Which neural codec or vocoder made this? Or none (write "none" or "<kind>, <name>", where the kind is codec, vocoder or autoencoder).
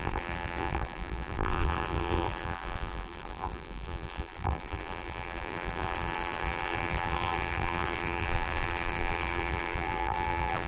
vocoder, BigVGAN v2